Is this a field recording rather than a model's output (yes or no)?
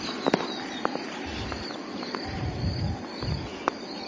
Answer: yes